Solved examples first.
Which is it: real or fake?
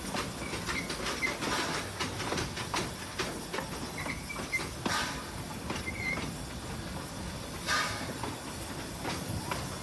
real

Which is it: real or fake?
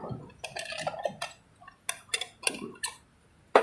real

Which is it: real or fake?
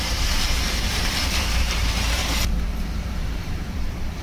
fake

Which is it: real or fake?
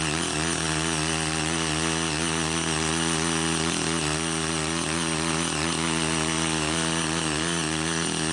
real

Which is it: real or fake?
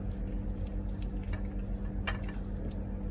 real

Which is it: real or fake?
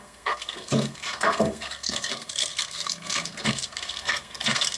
fake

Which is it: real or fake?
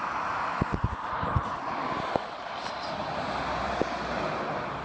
real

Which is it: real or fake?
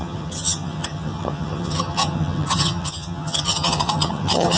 fake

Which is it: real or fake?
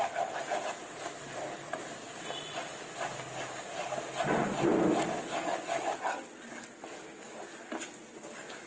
real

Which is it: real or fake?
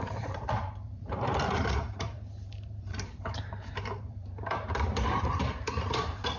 fake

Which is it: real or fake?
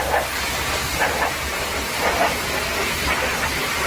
real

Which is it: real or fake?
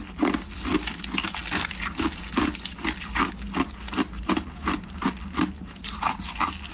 real